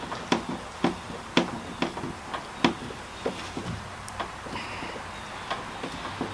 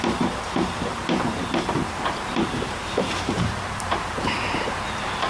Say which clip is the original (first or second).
first